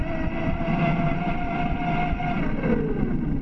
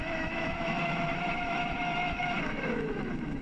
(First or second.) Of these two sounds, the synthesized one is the second